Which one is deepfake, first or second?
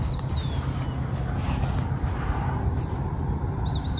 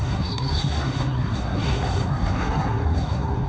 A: second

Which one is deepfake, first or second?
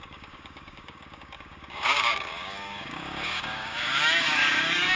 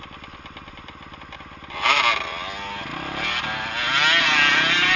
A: first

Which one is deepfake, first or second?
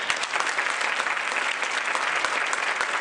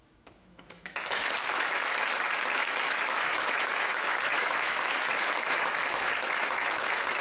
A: second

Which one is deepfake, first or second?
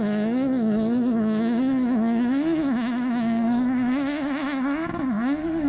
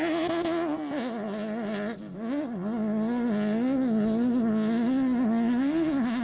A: first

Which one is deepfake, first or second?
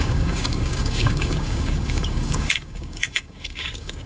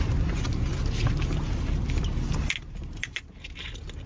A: first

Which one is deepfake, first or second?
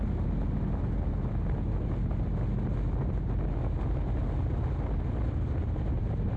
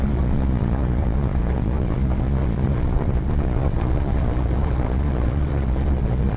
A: second